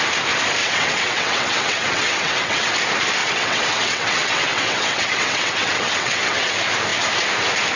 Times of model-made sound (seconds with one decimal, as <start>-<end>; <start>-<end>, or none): 0.6-2.7; 3.2-6.5